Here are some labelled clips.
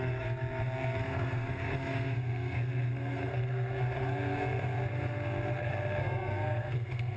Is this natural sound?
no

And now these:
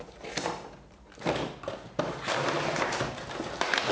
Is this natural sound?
yes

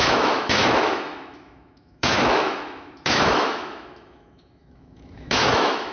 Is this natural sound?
no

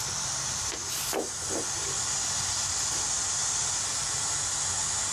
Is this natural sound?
yes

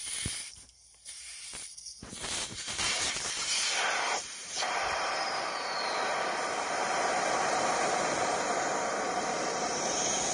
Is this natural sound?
no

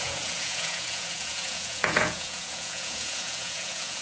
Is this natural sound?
no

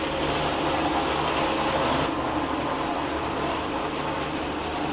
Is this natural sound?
yes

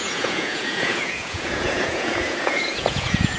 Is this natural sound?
no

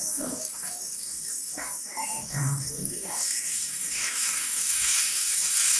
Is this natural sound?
no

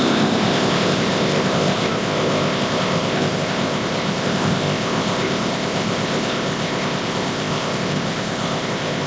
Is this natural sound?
no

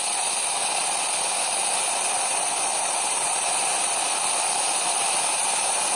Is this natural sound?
yes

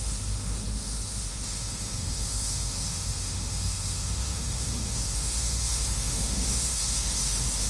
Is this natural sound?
no